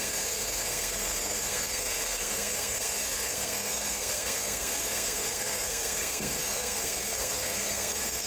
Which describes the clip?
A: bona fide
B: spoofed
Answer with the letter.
B